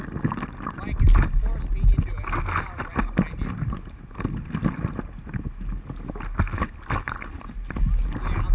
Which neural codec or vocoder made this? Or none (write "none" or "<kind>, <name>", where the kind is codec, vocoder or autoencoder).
none